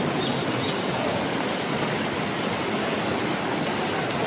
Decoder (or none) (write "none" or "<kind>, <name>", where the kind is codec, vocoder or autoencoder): none